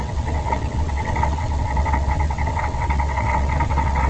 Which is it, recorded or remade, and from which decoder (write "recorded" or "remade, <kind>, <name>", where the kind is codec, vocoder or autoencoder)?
remade, vocoder, WaveNeXt